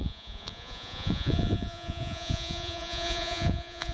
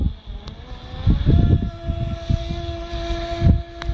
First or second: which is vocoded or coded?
first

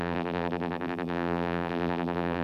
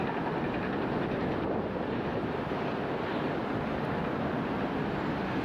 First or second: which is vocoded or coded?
first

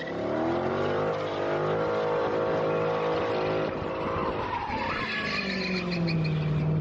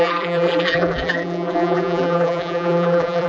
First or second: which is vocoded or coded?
second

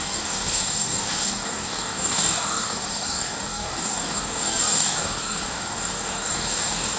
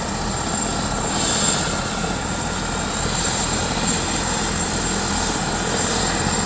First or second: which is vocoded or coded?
first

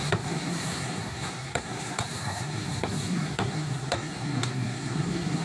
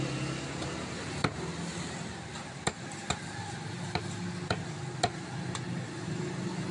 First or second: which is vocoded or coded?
first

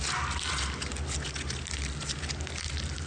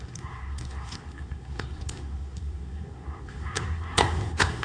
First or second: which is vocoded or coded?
second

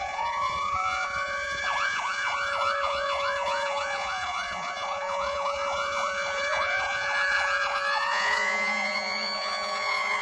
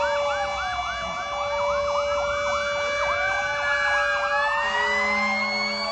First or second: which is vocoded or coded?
first